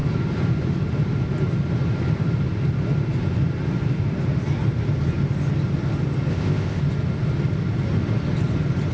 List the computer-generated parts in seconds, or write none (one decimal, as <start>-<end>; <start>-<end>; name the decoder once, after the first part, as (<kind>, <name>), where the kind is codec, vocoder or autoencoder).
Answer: 6.3-6.8 (codec, ZipCodec)